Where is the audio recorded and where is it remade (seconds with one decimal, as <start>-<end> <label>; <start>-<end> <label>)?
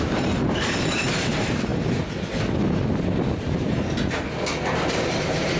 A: 0.0-1.7 remade; 1.7-4.9 recorded; 4.9-5.6 remade